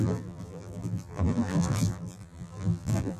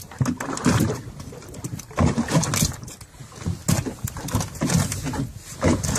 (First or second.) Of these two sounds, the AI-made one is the first